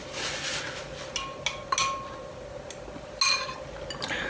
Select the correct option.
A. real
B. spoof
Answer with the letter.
A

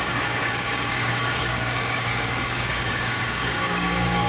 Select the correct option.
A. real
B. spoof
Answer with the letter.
B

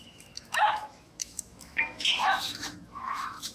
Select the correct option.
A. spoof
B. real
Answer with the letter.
A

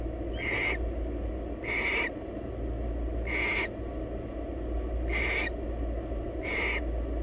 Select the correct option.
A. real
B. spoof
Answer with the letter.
A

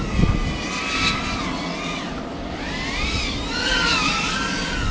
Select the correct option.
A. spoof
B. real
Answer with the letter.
B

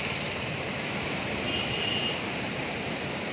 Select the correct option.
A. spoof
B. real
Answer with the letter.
A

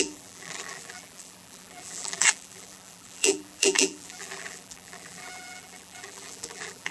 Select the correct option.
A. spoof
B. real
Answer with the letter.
A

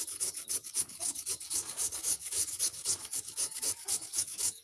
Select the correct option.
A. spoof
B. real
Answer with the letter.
A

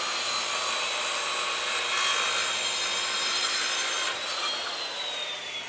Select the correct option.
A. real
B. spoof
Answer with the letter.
B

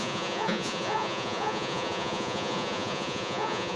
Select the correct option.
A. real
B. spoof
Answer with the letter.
B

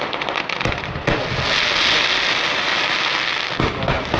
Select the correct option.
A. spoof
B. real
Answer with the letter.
B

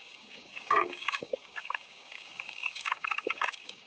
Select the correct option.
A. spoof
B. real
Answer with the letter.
A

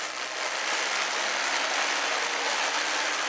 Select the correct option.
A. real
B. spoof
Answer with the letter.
A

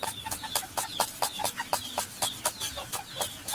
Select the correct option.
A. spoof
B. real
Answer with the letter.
B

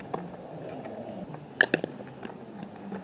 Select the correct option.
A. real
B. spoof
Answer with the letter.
A